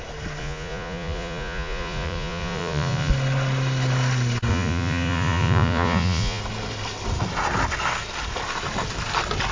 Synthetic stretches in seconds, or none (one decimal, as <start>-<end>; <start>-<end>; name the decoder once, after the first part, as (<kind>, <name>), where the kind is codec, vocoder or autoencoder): 0.4-3.1 (vocoder, Vocos); 4.5-6.4